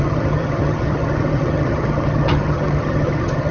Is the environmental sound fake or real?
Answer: fake